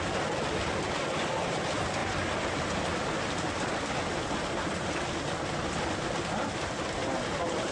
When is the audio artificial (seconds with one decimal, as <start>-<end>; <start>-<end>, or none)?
none